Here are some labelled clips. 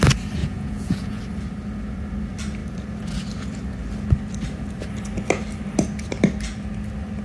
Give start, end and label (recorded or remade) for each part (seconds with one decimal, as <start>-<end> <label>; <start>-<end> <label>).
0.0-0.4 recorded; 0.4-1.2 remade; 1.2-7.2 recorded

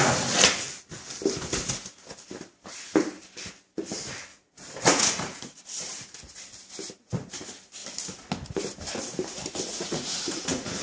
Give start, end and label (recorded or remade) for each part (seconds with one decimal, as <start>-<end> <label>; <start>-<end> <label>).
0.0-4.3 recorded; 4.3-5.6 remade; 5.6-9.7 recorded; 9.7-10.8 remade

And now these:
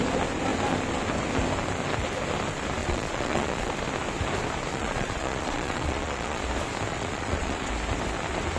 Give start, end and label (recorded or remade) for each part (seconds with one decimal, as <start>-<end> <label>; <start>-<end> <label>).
0.0-2.8 recorded; 2.8-3.7 remade; 3.7-4.7 recorded; 4.7-6.4 remade; 6.4-6.9 recorded; 6.9-7.7 remade; 7.7-8.6 recorded

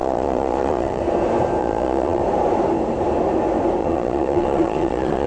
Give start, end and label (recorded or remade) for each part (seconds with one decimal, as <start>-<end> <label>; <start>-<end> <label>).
0.0-1.0 remade; 1.0-1.6 recorded; 1.6-2.2 remade; 2.2-3.8 recorded; 3.8-5.3 remade

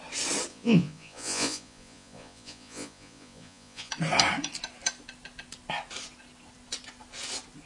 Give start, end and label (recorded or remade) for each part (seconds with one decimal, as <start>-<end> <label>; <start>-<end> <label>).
0.0-0.5 recorded; 0.5-3.9 remade; 3.9-7.7 recorded

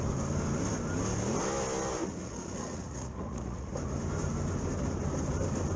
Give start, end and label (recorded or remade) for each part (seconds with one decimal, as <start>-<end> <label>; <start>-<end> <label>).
0.0-2.0 recorded; 2.0-3.7 remade; 3.7-5.8 recorded